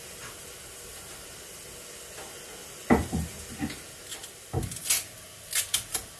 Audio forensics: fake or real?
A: real